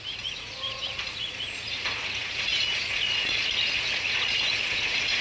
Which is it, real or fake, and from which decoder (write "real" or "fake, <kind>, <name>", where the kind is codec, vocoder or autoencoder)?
fake, vocoder, Vocos